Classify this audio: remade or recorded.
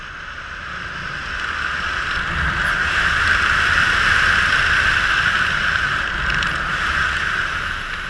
recorded